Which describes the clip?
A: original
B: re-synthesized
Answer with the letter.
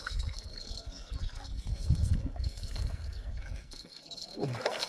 B